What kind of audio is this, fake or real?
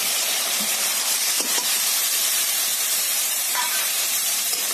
fake